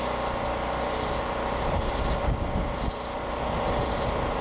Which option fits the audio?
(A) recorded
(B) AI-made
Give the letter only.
A